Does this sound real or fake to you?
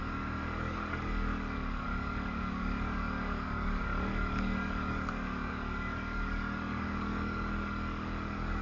fake